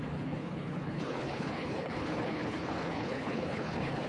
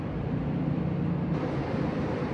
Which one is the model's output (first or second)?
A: first